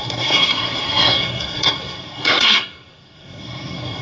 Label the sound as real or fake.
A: fake